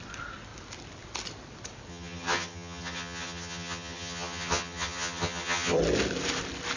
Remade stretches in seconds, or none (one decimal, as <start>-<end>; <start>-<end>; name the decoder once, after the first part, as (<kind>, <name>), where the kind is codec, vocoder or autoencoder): 1.9-5.8 (vocoder, HiFi-GAN)